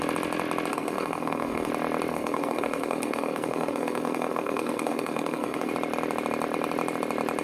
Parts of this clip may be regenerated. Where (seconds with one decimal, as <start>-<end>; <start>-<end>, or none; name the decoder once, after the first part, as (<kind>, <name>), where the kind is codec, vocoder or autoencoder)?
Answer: 0.7-1.7 (codec, SNAC); 2.1-5.7